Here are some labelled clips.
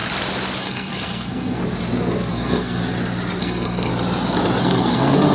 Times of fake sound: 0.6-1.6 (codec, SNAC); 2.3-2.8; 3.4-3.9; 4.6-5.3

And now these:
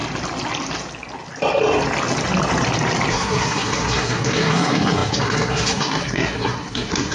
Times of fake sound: 3.1-7.1 (codec, SNAC)

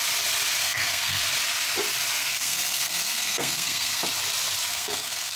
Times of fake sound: 0.6-1.2 (codec, SNAC); 2.2-4.0; 4.7-5.4

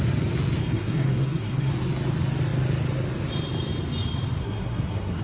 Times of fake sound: 0.6-1.7 (codec, SNAC); 4.4-5.2

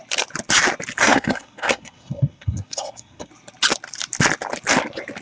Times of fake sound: 1.0-3.3 (codec, SNAC)

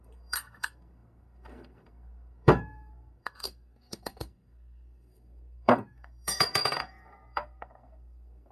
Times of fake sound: 0.0-8.5 (codec, SNAC)

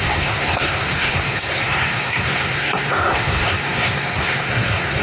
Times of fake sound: 0.0-5.0 (codec, SNAC)